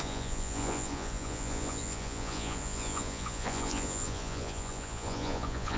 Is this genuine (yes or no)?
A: no